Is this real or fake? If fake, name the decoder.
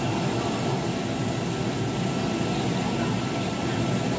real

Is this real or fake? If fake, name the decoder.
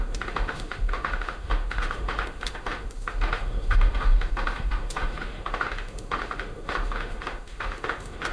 fake, autoencoder, DAC-VAE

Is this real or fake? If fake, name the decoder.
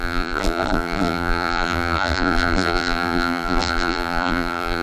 fake, vocoder, BigVGAN v2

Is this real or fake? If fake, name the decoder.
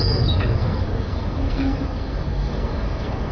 fake, codec, SNAC